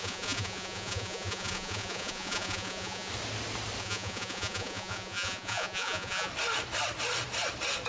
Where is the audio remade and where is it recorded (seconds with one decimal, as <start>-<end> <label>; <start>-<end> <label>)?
0.0-3.1 remade; 3.1-3.8 recorded; 3.8-6.3 remade; 6.3-7.9 recorded